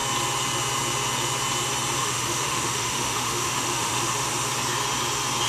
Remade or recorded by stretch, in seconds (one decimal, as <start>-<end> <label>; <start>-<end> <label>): 0.0-2.0 recorded; 2.0-4.3 remade; 4.3-5.5 recorded